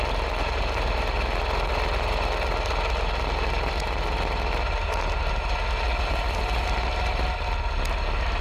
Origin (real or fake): real